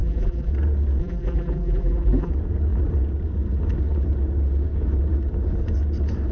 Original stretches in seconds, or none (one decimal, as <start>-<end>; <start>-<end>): 0.5-1.0; 2.3-6.3